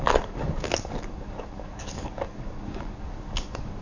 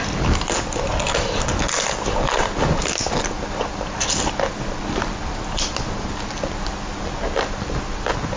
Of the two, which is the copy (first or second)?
first